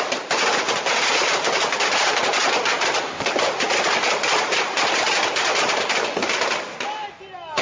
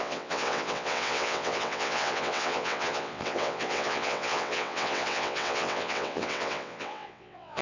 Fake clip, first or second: second